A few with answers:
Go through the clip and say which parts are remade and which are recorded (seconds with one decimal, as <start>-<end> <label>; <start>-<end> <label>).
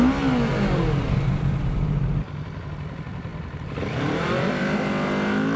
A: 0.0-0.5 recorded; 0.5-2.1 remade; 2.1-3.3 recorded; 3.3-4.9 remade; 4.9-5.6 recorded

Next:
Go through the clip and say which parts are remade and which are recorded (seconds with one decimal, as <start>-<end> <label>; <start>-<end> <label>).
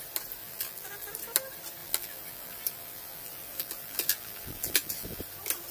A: 0.0-0.4 recorded; 0.4-1.1 remade; 1.1-1.8 recorded; 1.8-5.2 remade; 5.2-5.7 recorded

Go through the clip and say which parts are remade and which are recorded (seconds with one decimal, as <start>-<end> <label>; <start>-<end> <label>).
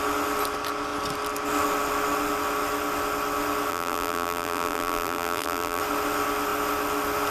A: 0.0-3.7 recorded; 3.7-5.8 remade; 5.8-7.3 recorded